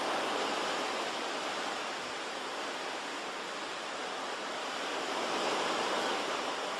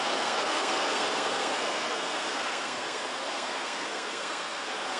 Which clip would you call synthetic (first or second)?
second